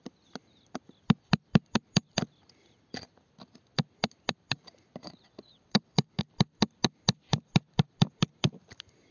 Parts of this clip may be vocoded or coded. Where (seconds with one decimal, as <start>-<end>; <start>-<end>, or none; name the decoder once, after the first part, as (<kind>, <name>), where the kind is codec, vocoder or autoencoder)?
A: 5.0-6.2 (vocoder, WaveNeXt)

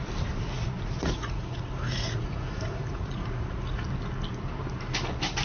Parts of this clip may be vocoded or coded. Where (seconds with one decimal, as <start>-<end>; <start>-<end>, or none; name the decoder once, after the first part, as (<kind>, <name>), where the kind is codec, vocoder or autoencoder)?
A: 1.0-3.8 (vocoder, Vocos)

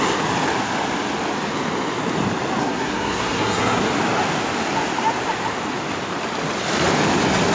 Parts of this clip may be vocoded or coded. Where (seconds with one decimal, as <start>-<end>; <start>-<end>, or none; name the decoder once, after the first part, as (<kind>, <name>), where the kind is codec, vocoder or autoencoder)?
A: 2.6-3.8 (codec, SNAC)

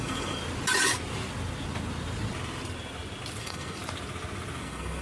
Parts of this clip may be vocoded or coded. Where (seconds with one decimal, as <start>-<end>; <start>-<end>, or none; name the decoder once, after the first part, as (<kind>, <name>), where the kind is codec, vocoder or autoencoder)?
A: 0.0-0.4 (codec, SNAC); 3.4-3.8; 4.6-5.0

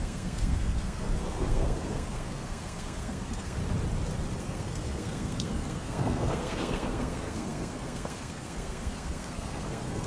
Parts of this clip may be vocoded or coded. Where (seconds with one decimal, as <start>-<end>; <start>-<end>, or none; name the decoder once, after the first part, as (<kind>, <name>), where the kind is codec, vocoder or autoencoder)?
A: 0.0-3.6 (codec, SNAC); 4.4-10.1

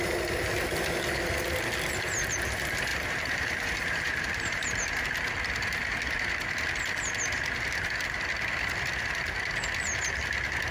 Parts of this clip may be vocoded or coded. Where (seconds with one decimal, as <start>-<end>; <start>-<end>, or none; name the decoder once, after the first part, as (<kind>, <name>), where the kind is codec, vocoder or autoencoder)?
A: 2.9-4.7 (vocoder, BigVGAN v2)

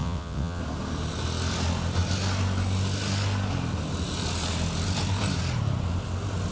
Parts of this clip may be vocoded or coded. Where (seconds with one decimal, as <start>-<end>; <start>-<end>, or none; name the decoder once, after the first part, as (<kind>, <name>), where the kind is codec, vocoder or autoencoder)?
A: 0.0-0.6 (vocoder, WaveNeXt)